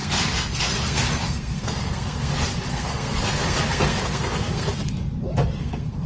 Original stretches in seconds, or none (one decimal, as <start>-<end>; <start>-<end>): 2.3-2.7; 4.9-5.6